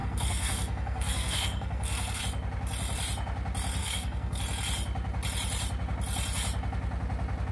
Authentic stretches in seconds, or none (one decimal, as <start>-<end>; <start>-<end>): 2.2-3.8; 4.4-7.5